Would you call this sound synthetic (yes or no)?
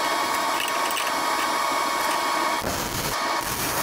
no